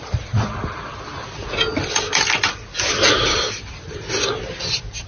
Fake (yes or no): no